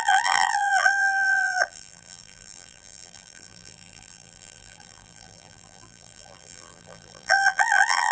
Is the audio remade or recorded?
remade